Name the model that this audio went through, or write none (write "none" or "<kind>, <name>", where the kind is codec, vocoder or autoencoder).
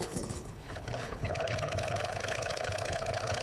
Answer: codec, HILCodec